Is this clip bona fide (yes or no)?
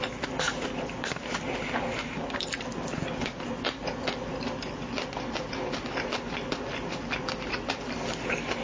yes